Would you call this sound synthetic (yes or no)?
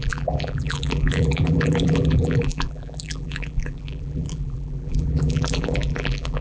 yes